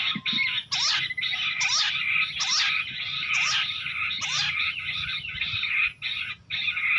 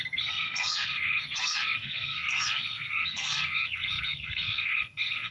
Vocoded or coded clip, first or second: second